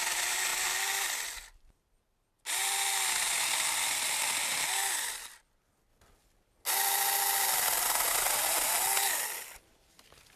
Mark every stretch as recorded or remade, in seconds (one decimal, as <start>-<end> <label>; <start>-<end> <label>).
0.0-10.4 recorded